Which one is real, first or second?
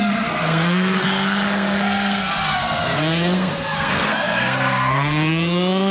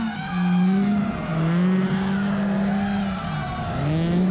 second